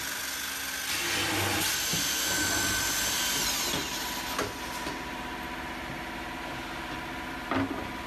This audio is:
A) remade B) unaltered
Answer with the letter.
B